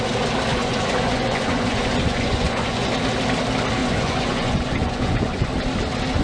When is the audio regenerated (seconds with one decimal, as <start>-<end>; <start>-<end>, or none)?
0.5-2.9; 3.8-5.5